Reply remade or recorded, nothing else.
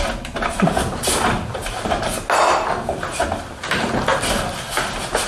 recorded